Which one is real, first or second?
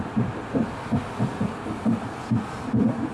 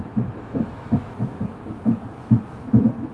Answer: first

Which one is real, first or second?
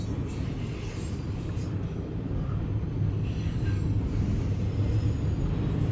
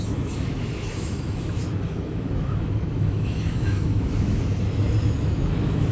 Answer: first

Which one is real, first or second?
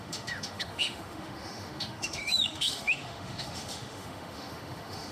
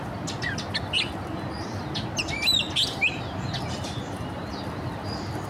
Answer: second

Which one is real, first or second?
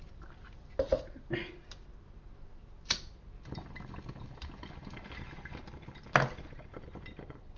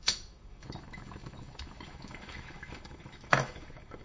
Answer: first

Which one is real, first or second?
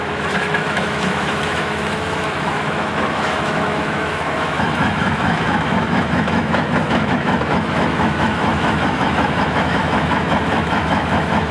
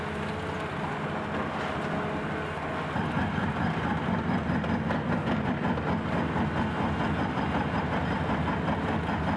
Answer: second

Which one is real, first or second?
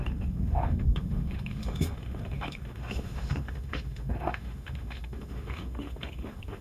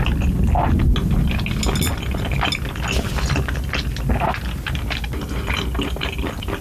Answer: second